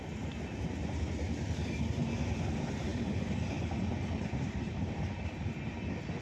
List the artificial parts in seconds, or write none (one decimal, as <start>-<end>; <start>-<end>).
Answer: none